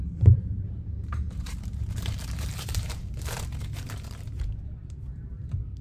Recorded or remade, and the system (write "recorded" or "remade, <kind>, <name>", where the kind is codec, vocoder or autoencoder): remade, vocoder, BigVGAN v2